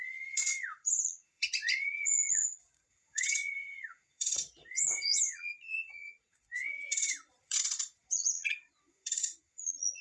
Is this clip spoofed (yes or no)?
yes